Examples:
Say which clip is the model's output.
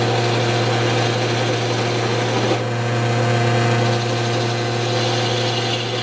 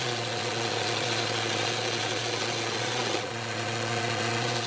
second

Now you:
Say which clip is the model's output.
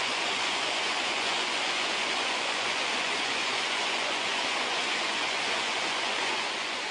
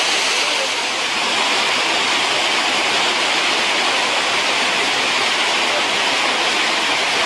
first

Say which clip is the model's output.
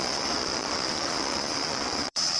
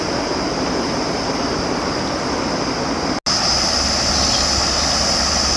first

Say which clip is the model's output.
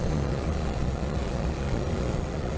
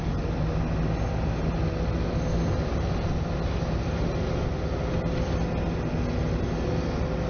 first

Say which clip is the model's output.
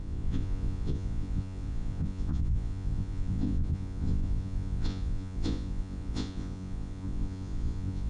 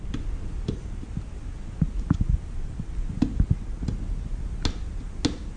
first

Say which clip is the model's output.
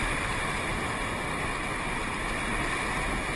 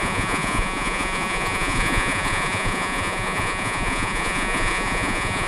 second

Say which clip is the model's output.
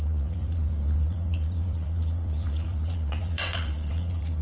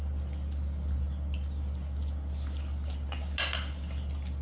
first